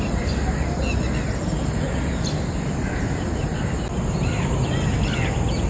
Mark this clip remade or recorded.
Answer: recorded